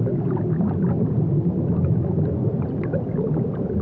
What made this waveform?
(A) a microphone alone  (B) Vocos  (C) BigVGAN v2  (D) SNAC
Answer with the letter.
A